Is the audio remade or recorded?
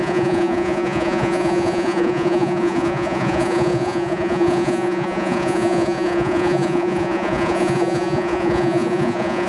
remade